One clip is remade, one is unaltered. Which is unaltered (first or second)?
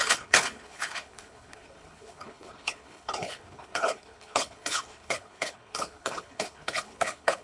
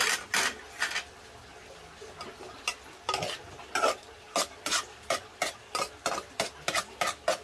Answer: second